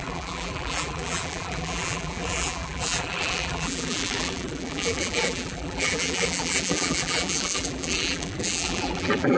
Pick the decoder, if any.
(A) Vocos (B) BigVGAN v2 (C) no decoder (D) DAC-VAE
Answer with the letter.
B